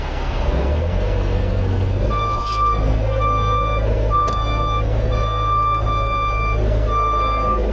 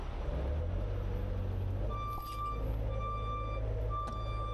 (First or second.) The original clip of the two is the second